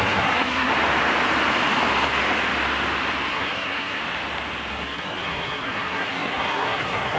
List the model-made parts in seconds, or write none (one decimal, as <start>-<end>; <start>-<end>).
0.0-0.7; 3.3-4.0; 4.7-7.2